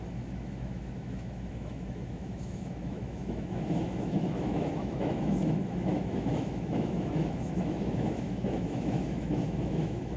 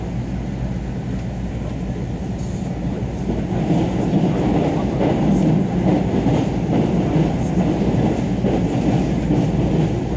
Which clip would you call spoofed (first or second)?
first